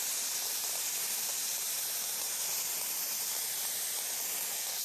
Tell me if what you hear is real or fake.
real